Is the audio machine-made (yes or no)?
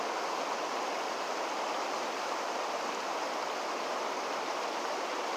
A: no